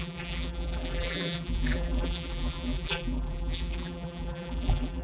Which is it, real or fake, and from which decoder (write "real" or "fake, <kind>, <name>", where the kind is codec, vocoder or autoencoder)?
fake, vocoder, BigVGAN v2